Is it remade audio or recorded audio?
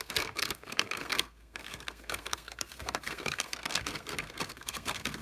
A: remade